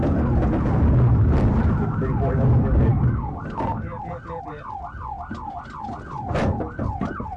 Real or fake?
real